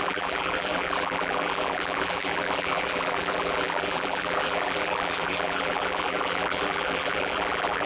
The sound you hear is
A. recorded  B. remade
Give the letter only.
B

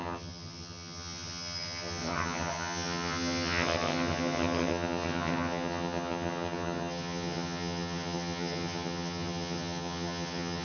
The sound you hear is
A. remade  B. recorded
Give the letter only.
A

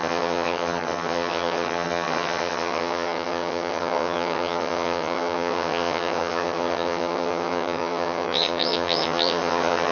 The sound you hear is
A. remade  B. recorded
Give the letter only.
A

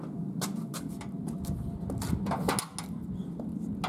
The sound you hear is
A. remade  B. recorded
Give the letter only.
B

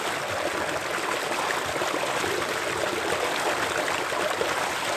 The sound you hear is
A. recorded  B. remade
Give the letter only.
A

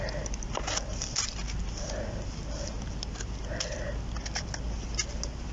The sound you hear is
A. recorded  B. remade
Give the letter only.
A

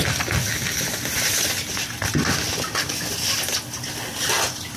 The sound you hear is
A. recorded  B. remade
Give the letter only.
A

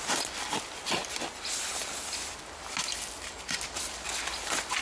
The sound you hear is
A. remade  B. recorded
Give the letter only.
B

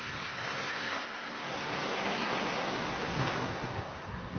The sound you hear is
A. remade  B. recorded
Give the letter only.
A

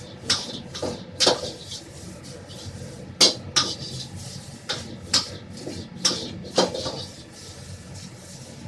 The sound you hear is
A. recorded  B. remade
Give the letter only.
A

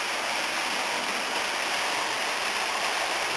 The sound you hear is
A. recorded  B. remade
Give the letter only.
A